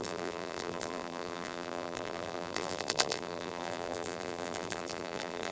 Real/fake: fake